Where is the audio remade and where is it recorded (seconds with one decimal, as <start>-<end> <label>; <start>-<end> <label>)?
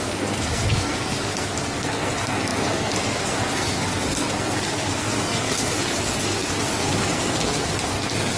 0.0-8.4 remade